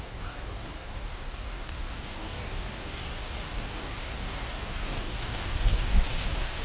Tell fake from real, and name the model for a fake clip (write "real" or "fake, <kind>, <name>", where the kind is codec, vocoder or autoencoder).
fake, codec, DAC